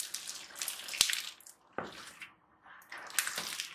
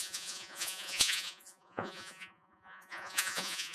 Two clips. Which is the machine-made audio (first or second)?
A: second